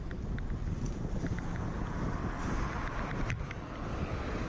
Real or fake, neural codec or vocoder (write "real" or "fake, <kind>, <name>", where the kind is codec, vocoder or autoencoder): real